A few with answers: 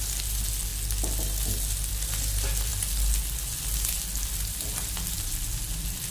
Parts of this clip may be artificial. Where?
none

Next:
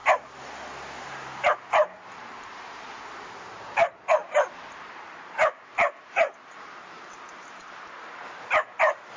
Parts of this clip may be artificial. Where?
1.0-4.2; 4.8-9.2

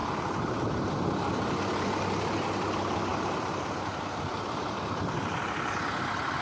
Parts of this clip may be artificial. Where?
0.0-0.9; 3.1-5.4

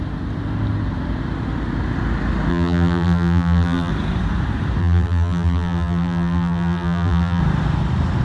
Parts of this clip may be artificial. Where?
2.5-3.9; 4.8-7.4

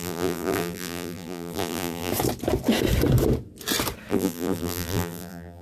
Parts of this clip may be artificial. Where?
0.0-2.1; 4.1-5.6

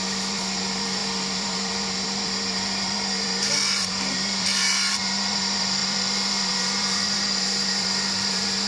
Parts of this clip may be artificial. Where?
0.0-8.7

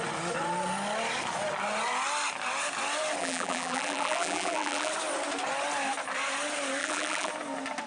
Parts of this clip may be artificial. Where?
3.2-4.9; 6.8-7.3

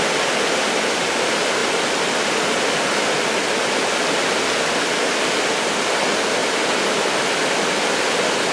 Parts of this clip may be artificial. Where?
6.4-7.4